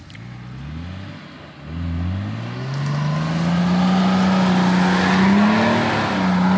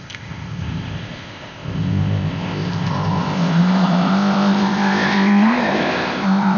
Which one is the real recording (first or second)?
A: first